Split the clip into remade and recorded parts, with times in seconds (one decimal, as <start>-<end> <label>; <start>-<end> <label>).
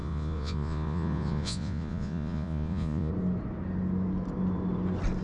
0.0-3.1 remade; 3.1-5.2 recorded